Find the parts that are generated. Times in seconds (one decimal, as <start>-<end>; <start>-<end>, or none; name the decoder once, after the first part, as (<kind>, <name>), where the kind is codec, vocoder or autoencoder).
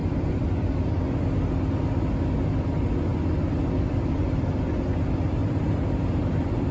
5.4-6.7 (vocoder, BigVGAN v2)